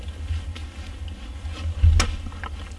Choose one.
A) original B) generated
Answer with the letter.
A